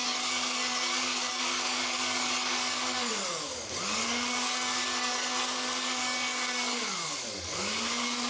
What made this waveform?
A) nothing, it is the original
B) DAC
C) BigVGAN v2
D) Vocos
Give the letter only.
B